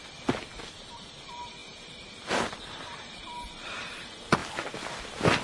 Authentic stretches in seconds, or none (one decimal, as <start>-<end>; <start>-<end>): 0.0-5.4